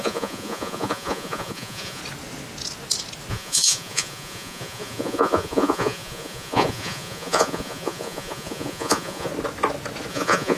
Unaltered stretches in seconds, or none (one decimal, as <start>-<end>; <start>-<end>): 2.0-3.3; 9.3-10.1